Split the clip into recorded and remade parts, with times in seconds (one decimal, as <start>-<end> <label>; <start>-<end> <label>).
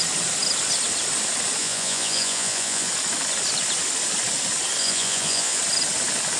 0.0-1.6 recorded; 1.6-2.9 remade; 2.9-4.8 recorded; 4.8-5.6 remade; 5.6-6.4 recorded